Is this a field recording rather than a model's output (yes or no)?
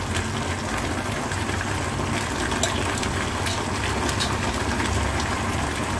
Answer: yes